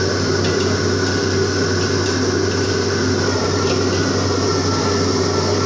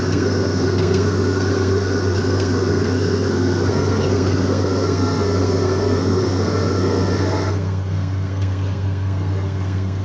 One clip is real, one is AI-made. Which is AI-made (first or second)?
second